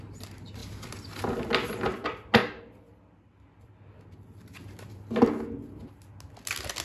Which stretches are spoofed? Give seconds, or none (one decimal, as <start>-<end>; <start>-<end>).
none